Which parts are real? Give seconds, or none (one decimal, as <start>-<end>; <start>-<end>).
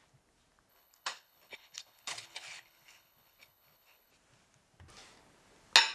0.0-0.7; 4.1-5.9